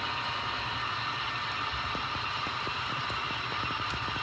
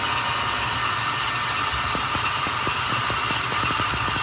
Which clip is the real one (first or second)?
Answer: second